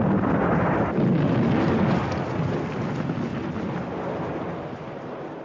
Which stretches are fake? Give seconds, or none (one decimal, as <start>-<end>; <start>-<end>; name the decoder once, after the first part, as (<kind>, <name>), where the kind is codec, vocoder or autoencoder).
none